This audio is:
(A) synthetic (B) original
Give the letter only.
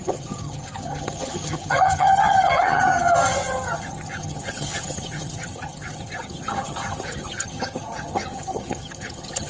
A